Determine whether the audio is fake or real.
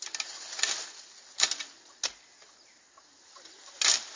real